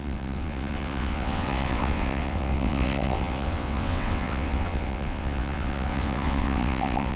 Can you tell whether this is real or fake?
fake